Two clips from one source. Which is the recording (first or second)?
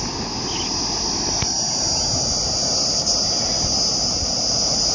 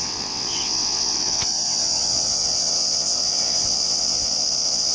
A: first